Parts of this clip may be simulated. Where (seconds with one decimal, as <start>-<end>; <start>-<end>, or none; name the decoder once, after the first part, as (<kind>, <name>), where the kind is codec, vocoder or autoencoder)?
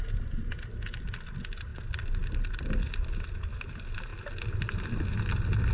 none